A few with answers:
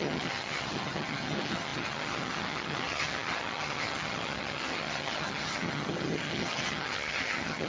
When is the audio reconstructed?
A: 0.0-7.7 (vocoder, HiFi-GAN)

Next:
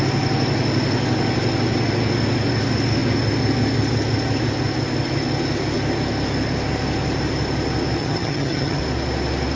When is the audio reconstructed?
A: 8.0-8.8 (vocoder, HiFi-GAN)

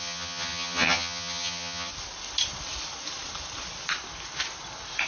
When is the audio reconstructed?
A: 0.0-1.9 (vocoder, HiFi-GAN)

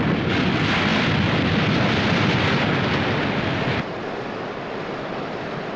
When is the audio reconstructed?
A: none